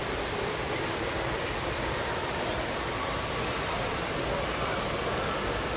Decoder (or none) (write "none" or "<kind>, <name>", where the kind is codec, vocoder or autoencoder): vocoder, BigVGAN v2